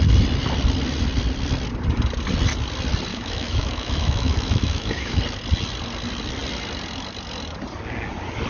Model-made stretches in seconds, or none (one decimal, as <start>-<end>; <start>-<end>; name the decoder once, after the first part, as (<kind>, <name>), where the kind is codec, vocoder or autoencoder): 3.1-5.2 (autoencoder, DAC-VAE)